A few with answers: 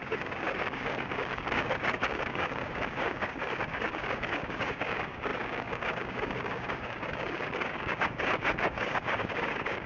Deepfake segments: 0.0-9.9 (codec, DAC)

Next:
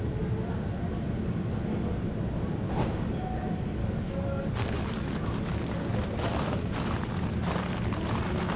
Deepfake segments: 3.8-5.9 (codec, DAC)

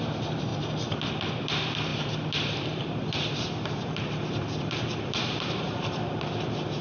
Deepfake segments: 0.0-0.5 (vocoder, BigVGAN v2); 1.3-6.8

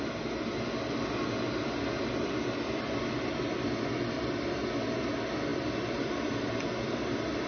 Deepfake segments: 5.5-6.5 (vocoder, BigVGAN v2)

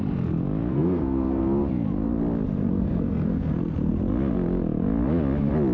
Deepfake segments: 0.7-1.4 (codec, SNAC); 2.6-3.9

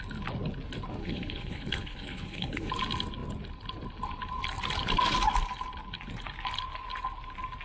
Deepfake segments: 1.0-2.7 (codec, HILCodec)

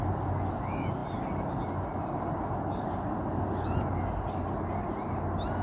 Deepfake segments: none

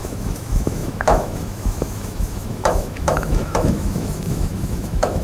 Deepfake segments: 0.0-5.2 (autoencoder, DAC-VAE)